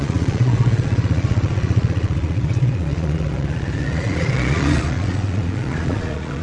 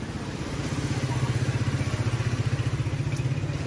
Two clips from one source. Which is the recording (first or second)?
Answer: second